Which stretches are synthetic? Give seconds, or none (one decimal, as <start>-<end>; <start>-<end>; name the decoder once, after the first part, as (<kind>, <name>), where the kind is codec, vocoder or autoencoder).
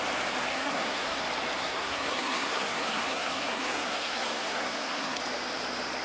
0.5-1.2 (codec, SNAC); 1.6-5.2